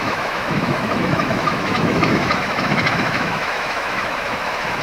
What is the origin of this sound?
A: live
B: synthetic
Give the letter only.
B